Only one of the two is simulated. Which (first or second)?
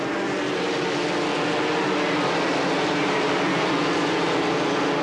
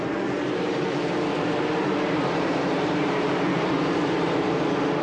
second